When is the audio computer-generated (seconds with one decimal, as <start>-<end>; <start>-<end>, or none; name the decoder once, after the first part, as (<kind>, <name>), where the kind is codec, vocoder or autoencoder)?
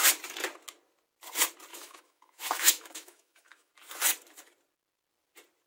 1.7-3.7 (autoencoder, DAC-VAE)